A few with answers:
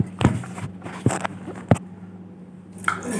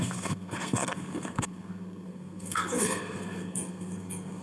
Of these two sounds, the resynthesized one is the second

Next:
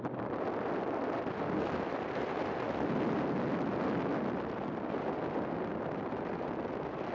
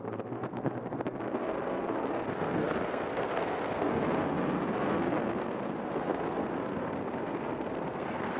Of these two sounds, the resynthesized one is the second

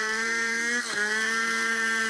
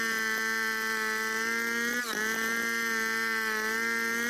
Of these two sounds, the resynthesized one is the first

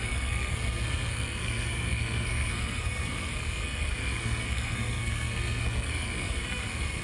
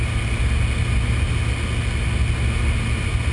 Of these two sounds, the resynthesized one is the first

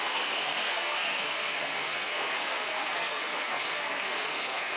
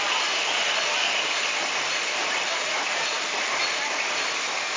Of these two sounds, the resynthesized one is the first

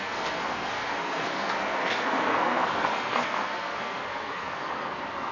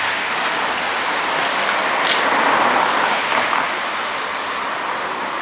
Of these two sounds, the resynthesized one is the first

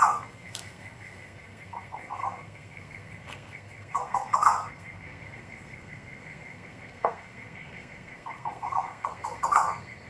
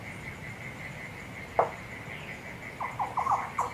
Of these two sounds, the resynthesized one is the first